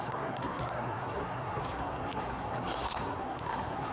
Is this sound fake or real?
fake